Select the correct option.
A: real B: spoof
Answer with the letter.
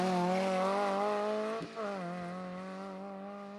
A